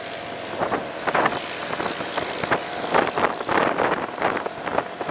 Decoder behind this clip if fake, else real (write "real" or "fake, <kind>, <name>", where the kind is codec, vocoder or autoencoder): real